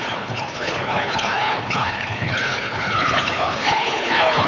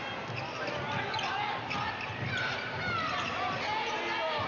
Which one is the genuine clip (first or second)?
second